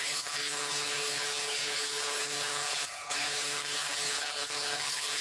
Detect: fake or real fake